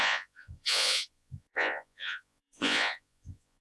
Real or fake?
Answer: fake